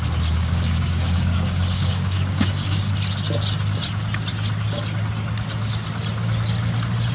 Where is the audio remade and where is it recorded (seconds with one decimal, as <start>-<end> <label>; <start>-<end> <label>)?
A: 0.0-0.4 recorded; 0.4-2.9 remade; 2.9-7.1 recorded